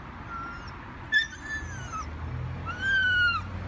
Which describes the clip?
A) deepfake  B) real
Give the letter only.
B